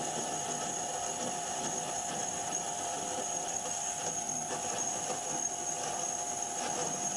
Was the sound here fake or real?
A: real